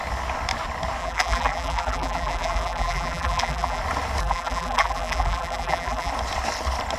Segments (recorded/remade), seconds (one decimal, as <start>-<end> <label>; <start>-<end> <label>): 0.0-1.0 recorded; 1.0-3.8 remade; 3.8-4.2 recorded; 4.2-6.1 remade; 6.1-7.0 recorded